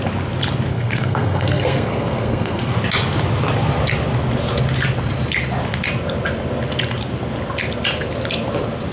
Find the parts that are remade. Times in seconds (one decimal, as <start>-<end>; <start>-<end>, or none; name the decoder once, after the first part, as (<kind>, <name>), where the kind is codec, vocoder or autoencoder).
0.7-2.7 (codec, SNAC)